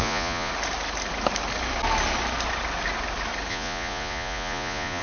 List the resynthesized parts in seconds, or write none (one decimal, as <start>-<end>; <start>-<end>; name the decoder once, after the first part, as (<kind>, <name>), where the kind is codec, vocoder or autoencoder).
0.0-0.5 (vocoder, Vocos); 3.5-5.0